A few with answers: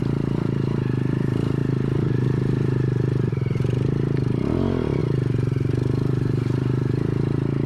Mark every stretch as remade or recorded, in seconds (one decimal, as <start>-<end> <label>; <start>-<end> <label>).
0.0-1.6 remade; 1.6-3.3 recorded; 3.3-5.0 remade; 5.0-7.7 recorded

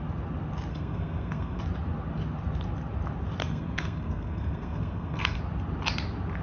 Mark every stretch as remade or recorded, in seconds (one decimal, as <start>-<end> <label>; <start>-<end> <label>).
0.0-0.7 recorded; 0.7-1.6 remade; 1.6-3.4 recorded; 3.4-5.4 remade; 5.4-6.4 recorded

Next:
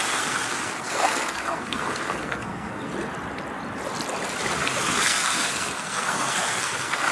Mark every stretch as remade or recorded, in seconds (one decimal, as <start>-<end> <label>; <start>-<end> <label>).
0.0-2.9 remade; 2.9-4.6 recorded; 4.6-7.1 remade